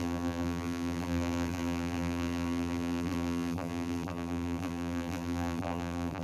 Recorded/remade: remade